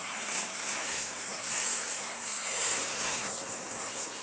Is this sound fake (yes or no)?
yes